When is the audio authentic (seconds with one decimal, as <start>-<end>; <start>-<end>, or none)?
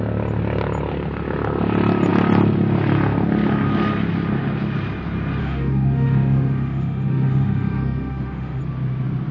0.0-5.4; 8.6-9.3